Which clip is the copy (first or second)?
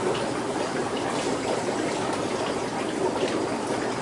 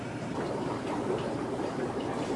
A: second